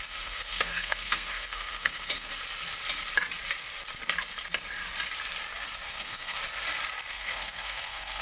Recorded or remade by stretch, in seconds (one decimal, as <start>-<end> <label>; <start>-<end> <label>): 0.0-2.3 remade; 2.3-5.9 recorded; 5.9-6.4 remade; 6.4-7.1 recorded; 7.1-8.2 remade

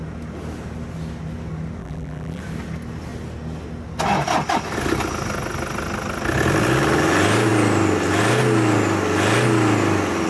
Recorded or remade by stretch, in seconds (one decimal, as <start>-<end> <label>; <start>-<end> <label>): 0.0-1.8 recorded; 1.8-2.4 remade; 2.4-10.3 recorded

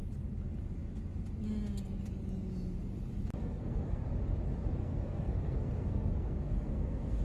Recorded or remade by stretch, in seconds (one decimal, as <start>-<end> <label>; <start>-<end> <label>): 0.0-3.4 recorded; 3.4-4.1 remade; 4.1-4.8 recorded; 4.8-7.2 remade

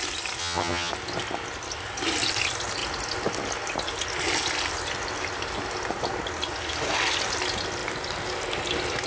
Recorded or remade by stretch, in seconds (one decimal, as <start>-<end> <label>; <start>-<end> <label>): 0.0-0.4 recorded; 0.4-0.9 remade; 0.9-9.1 recorded